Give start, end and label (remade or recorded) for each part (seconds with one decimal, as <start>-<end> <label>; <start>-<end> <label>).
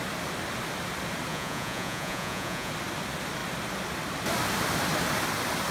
0.0-1.3 recorded; 1.3-2.7 remade; 2.7-5.7 recorded